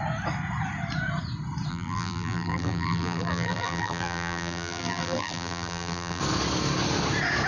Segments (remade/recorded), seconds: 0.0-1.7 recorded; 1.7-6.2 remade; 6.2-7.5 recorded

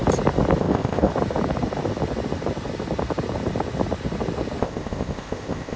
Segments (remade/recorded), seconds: 0.0-0.6 recorded; 0.6-1.1 remade; 1.1-4.6 recorded; 4.6-5.8 remade